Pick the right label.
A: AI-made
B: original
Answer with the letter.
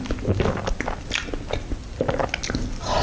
B